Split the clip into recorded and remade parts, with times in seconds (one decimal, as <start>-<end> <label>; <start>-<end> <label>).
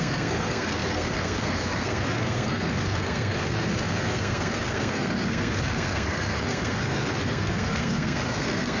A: 0.0-8.8 remade